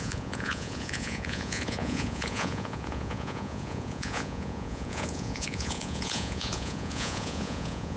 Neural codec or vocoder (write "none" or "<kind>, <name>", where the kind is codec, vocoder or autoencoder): vocoder, Vocos